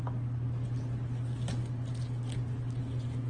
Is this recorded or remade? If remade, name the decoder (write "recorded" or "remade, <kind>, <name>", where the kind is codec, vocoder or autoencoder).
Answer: recorded